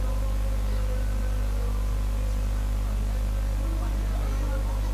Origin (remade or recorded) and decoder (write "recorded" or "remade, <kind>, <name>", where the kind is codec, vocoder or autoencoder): recorded